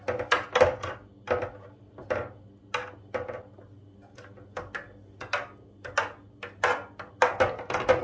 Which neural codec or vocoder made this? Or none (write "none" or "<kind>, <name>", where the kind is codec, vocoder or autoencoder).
none